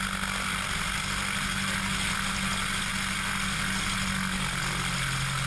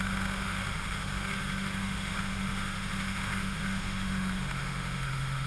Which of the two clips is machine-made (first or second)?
second